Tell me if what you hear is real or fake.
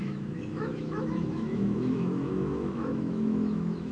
fake